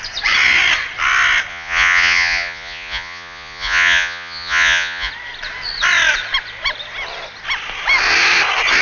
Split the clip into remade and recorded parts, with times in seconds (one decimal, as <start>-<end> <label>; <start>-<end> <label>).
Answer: 0.0-1.5 recorded; 1.5-5.1 remade; 5.1-8.8 recorded